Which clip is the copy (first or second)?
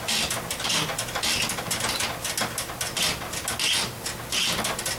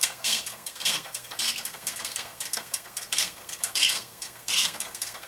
second